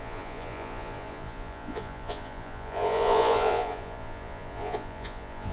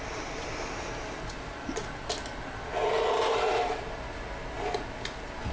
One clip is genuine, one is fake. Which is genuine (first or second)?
second